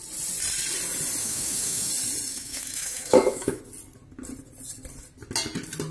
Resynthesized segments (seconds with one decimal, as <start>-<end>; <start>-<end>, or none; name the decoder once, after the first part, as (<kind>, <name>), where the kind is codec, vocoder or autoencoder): 1.2-1.9 (autoencoder, DAC-VAE); 2.3-3.6